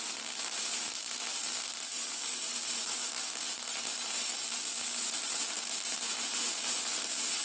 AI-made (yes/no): yes